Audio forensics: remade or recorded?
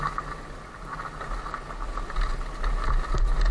recorded